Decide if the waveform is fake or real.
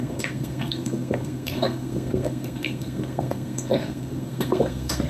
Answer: fake